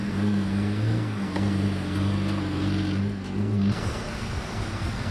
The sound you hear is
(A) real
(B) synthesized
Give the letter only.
B